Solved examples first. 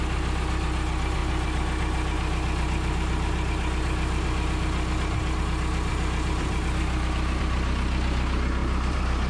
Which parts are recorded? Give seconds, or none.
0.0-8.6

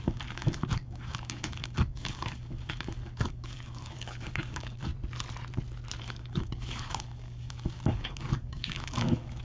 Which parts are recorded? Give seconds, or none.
4.9-6.0

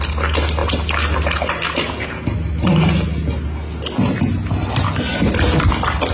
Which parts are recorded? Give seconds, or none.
0.0-6.1

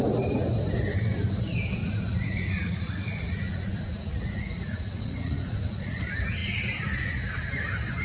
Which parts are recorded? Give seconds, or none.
0.0-1.8; 6.0-8.0

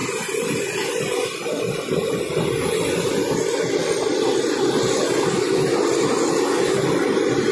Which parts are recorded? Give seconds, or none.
2.2-7.5